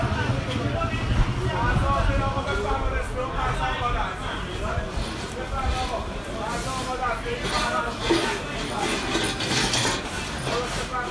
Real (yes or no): yes